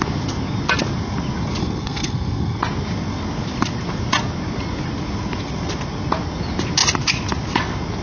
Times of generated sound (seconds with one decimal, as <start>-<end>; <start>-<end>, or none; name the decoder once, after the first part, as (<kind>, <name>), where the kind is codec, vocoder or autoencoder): 1.6-2.6 (codec, SNAC)